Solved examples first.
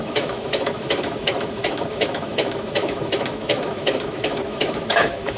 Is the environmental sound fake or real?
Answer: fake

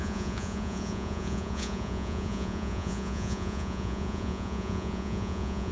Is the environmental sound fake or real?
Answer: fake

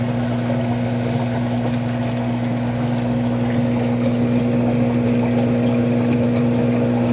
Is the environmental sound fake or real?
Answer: real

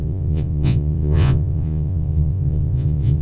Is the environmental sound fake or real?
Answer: fake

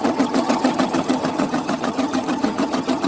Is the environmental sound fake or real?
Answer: fake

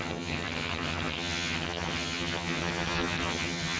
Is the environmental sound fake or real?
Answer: fake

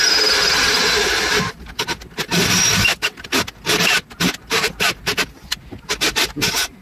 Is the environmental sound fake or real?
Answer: real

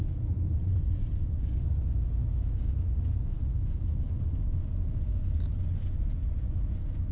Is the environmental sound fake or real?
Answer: fake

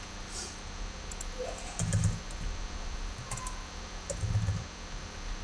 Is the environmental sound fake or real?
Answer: real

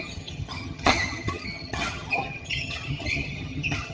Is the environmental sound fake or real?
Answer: fake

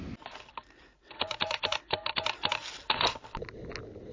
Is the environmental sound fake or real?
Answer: real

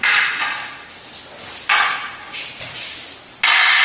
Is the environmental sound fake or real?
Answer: real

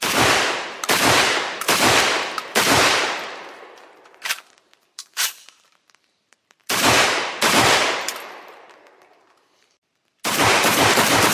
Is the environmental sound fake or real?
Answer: fake